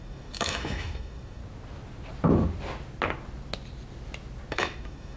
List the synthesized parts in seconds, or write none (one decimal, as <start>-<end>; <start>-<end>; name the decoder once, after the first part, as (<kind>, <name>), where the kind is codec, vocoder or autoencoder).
0.0-1.4 (autoencoder, DAC-VAE); 4.5-5.2